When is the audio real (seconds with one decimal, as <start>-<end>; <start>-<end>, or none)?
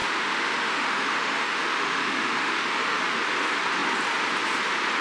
3.0-5.0